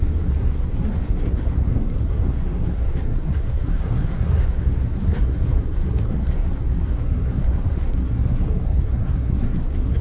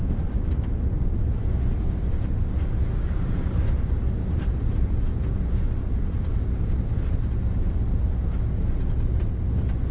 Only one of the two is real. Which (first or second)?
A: second